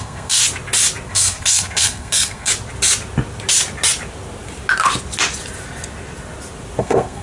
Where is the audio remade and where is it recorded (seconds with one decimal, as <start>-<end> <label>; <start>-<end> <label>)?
0.0-0.4 remade; 0.4-1.1 recorded; 1.1-2.5 remade; 2.5-6.8 recorded; 6.8-7.2 remade